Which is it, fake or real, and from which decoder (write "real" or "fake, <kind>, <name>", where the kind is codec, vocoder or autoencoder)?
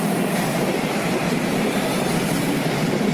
fake, vocoder, BigVGAN v2